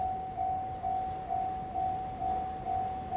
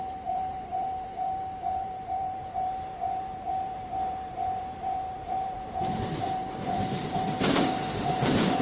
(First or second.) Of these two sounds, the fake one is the second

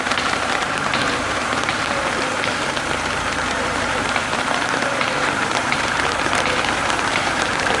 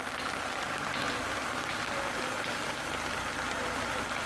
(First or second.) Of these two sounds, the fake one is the first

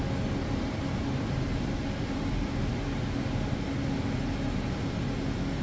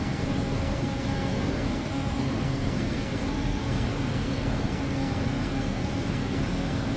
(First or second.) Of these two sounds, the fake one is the second